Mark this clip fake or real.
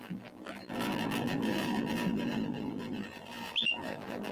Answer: fake